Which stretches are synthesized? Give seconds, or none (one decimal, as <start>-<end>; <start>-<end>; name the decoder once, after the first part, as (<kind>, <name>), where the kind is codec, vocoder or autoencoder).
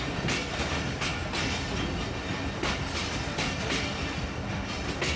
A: none